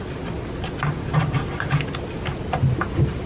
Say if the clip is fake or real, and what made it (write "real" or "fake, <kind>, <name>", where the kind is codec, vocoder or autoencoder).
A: real